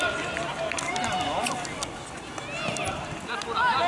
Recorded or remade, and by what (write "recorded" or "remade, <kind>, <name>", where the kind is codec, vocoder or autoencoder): recorded